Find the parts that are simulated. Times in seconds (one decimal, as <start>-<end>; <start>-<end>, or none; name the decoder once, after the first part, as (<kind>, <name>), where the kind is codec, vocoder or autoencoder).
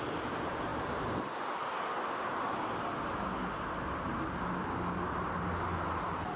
none